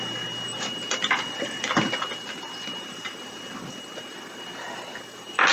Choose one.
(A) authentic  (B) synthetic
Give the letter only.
A